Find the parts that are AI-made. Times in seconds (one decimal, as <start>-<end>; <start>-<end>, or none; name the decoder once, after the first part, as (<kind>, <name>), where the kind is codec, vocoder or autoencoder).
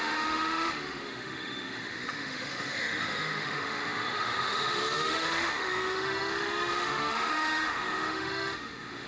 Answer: 0.0-9.1 (autoencoder, DAC-VAE)